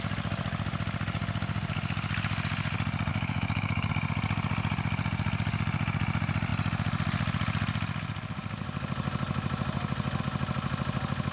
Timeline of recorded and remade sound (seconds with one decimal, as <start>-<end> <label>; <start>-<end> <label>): 0.0-3.1 recorded; 3.1-3.9 remade; 3.9-11.3 recorded

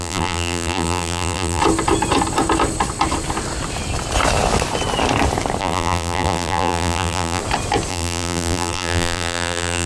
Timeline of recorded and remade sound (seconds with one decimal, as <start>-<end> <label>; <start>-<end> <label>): 0.0-1.6 remade; 1.6-5.6 recorded; 5.6-7.4 remade; 7.4-7.9 recorded; 7.9-9.9 remade

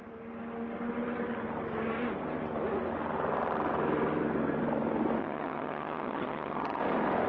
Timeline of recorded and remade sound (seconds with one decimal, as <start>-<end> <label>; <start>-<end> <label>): 0.0-5.2 recorded; 5.2-6.8 remade; 6.8-7.3 recorded

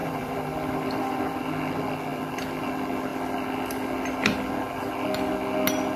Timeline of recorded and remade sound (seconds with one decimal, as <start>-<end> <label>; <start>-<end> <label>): 0.0-1.4 remade; 1.4-2.1 recorded; 2.1-2.6 remade; 2.6-6.0 recorded

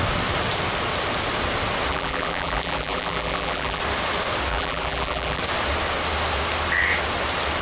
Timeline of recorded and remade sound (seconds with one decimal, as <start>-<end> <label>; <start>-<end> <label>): 0.0-1.9 recorded; 1.9-3.8 remade; 3.8-4.5 recorded; 4.5-5.4 remade; 5.4-7.6 recorded

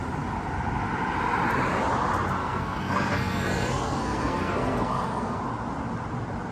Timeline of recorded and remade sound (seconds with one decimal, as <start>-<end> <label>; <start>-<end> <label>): 0.0-2.4 recorded; 2.4-5.4 remade; 5.4-6.5 recorded

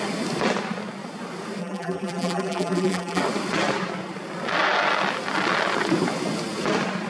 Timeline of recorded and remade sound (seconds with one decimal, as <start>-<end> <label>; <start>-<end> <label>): 0.0-1.6 recorded; 1.6-3.2 remade; 3.2-7.1 recorded

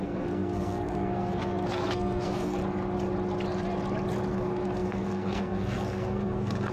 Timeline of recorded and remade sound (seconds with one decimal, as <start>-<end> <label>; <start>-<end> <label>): 0.0-2.6 remade; 2.6-4.3 recorded; 4.3-6.7 remade